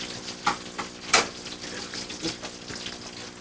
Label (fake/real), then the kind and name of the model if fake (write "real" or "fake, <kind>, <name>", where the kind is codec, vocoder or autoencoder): real